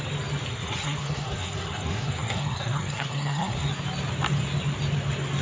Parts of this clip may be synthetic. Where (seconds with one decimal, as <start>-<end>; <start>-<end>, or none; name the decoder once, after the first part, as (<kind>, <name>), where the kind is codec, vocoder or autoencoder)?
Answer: 0.5-3.7 (codec, SNAC)